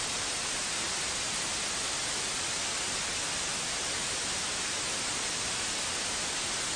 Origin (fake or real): real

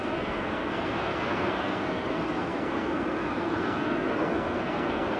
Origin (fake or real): fake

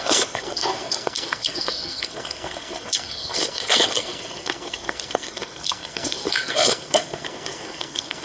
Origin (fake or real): fake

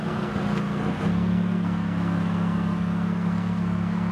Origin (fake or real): fake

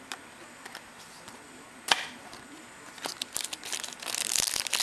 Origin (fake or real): real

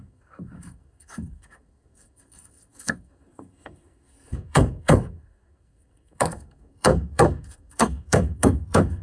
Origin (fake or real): fake